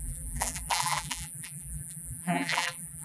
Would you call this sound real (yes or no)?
no